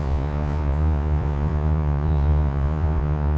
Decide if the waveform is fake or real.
fake